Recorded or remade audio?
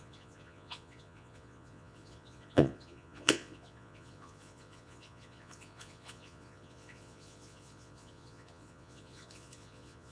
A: remade